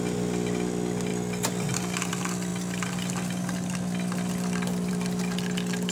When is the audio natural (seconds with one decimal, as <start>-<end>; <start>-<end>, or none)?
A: 0.0-5.9